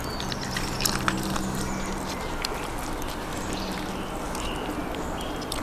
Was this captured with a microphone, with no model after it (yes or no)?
yes